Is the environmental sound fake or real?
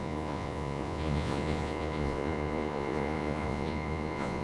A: fake